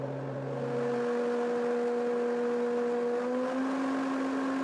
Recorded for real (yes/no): yes